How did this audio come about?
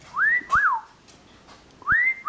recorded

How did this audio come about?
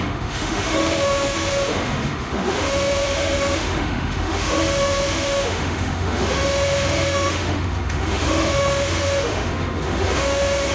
remade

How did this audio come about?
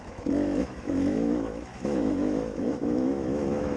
remade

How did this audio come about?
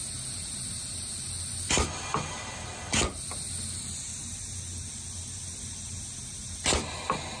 recorded